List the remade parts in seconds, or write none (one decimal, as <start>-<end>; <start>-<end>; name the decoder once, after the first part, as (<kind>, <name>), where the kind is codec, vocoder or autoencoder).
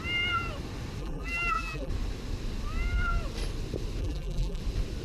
1.0-1.9 (vocoder, BigVGAN v2); 4.0-4.6